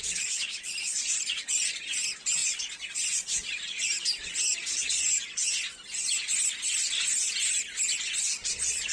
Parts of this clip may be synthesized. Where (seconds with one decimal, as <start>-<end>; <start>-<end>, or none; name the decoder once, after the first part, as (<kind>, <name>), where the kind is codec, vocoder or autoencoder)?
2.4-3.5 (vocoder, Vocos)

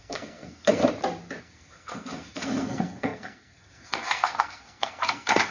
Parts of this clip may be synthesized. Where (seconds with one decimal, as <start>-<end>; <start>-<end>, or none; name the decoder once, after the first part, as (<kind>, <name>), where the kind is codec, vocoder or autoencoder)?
0.0-0.8 (codec, SNAC); 1.4-5.5

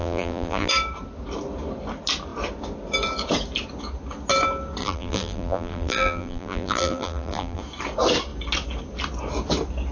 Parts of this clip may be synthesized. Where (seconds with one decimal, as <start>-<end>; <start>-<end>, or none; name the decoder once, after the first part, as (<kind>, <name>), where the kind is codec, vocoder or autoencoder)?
0.0-0.7 (vocoder, BigVGAN v2); 4.8-7.6

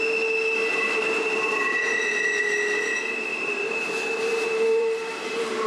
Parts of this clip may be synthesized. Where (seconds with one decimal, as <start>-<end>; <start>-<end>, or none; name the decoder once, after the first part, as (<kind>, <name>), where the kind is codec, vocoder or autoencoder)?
3.3-5.7 (vocoder, BigVGAN v2)

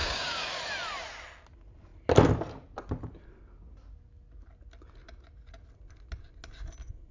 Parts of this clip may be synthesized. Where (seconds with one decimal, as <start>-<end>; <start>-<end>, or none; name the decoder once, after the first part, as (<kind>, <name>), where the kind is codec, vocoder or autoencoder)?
0.0-0.6 (codec, DAC)

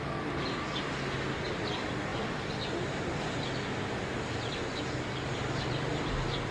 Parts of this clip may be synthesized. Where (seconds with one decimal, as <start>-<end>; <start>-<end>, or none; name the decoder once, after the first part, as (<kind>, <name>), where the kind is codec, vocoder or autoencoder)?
2.1-2.6 (vocoder, BigVGAN v2)